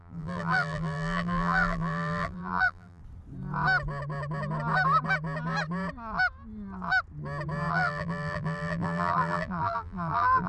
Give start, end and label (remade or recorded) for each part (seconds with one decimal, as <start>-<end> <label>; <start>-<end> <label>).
0.0-3.0 remade; 3.0-7.7 recorded; 7.7-10.5 remade